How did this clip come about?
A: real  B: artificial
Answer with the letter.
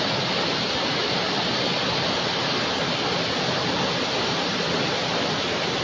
A